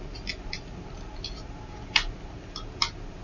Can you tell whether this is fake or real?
real